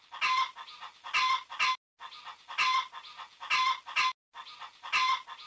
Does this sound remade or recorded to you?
recorded